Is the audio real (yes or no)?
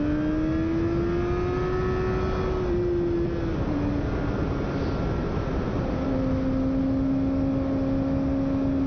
yes